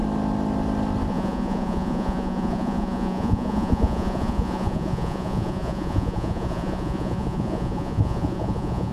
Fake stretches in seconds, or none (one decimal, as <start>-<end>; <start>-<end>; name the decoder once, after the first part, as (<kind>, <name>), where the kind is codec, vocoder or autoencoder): 1.1-8.9 (vocoder, Vocos)